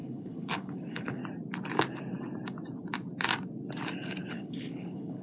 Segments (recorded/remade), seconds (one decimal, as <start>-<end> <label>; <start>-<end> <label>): 0.0-1.2 remade; 1.2-4.3 recorded; 4.3-5.2 remade